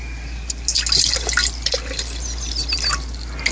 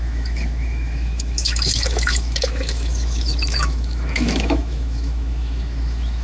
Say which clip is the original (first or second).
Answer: first